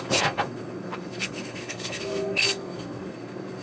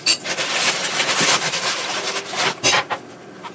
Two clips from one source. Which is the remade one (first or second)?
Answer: first